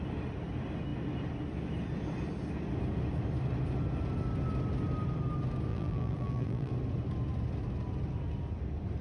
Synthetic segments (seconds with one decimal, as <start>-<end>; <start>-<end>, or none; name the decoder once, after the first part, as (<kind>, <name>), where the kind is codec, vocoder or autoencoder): 5.7-6.7 (vocoder, BigVGAN v2)